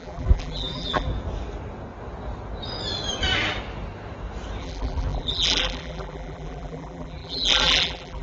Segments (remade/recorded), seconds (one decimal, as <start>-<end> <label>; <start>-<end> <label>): 0.0-1.1 remade; 1.1-4.6 recorded; 4.6-8.2 remade